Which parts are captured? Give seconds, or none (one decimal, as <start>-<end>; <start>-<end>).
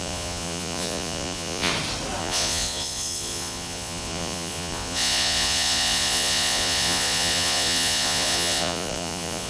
1.7-2.2